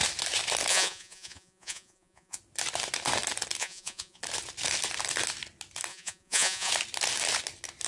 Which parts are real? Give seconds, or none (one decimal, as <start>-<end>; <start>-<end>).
0.0-0.7; 2.4-3.6; 4.2-5.9; 6.7-7.9